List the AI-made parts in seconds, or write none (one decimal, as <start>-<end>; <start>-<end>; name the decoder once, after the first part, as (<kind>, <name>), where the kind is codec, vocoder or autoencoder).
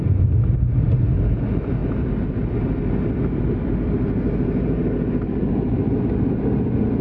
none